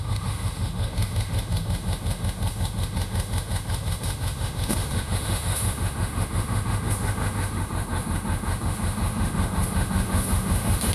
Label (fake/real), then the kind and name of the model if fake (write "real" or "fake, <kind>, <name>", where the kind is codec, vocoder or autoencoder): fake, autoencoder, DAC-VAE